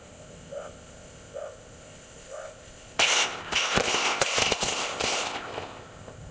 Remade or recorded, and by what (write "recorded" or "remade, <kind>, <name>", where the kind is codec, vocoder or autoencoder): remade, codec, ZipCodec